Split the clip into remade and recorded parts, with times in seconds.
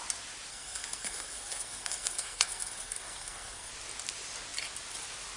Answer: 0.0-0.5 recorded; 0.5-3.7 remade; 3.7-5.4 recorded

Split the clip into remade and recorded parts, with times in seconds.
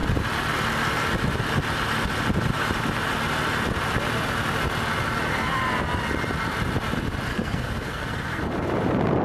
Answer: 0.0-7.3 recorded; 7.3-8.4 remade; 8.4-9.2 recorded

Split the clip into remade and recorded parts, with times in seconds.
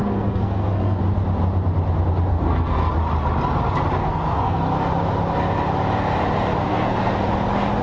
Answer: 0.0-1.0 remade; 1.0-2.3 recorded; 2.3-2.9 remade; 2.9-4.0 recorded; 4.0-4.6 remade; 4.6-6.6 recorded; 6.6-7.3 remade; 7.3-7.8 recorded